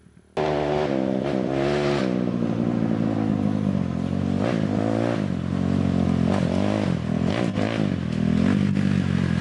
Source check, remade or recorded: recorded